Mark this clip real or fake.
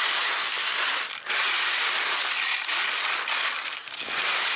real